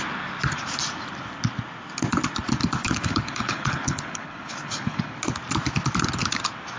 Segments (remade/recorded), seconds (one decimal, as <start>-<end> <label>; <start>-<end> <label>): 0.0-2.8 recorded; 2.8-5.2 remade; 5.2-6.8 recorded